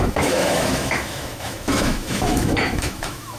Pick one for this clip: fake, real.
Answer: fake